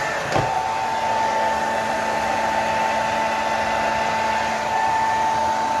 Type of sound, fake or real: real